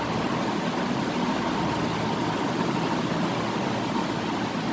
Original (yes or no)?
yes